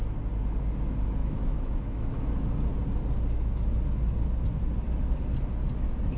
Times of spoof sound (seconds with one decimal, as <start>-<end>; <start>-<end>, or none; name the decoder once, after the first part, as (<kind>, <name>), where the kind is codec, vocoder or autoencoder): 1.2-2.3 (autoencoder, DAC-VAE)